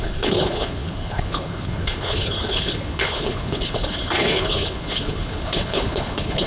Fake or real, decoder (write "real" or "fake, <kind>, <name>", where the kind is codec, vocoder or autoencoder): fake, codec, HILCodec